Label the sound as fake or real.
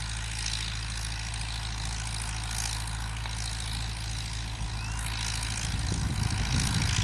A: real